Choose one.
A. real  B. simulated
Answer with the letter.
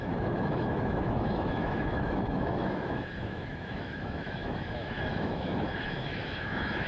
B